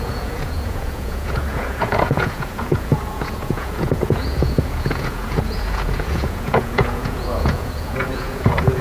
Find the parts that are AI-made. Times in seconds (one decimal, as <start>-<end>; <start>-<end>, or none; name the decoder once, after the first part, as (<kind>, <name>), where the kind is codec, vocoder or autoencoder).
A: 0.0-8.8 (vocoder, Vocos)